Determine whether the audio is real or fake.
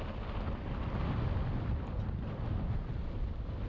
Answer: real